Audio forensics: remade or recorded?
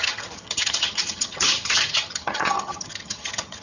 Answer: remade